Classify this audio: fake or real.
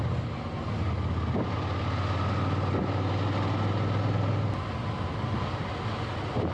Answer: real